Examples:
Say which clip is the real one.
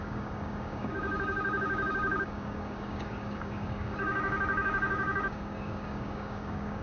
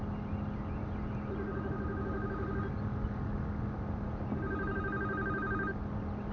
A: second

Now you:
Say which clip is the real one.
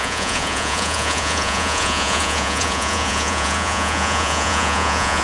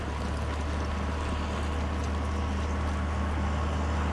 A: second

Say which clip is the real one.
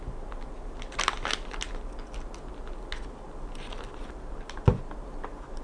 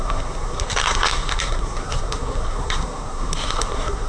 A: first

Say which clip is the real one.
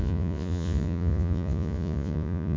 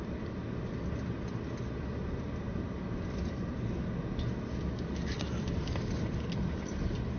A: second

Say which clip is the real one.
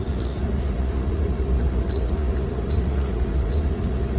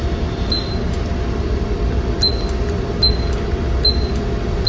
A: second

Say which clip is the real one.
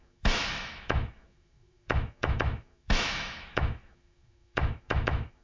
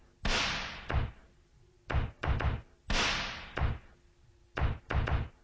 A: second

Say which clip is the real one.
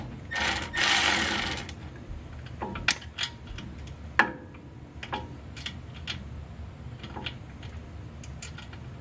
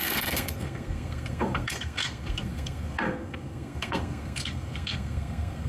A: first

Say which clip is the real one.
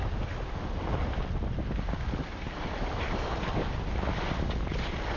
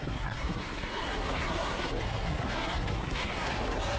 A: first